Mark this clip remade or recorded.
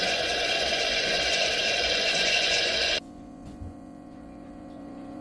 remade